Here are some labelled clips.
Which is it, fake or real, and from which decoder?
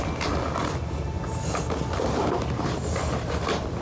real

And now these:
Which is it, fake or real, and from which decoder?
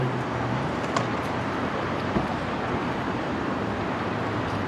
fake, vocoder, BigVGAN v2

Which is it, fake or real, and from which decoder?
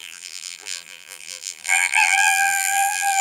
fake, vocoder, BigVGAN v2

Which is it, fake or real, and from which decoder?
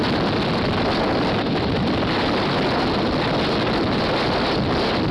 real